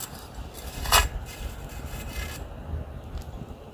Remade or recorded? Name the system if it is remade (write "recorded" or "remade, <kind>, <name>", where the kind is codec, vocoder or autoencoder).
recorded